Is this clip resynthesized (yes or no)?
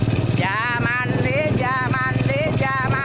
no